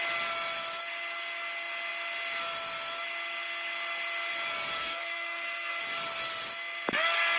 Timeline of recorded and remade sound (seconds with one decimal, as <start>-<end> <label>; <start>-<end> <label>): 0.0-4.8 recorded; 4.8-5.8 remade; 5.8-7.4 recorded